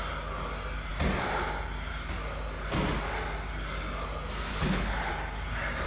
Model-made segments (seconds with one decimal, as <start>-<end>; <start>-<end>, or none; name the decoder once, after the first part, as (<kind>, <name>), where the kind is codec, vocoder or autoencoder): 4.5-5.1 (codec, HILCodec)